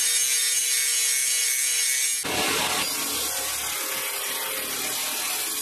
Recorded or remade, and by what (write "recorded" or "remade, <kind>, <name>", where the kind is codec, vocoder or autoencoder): recorded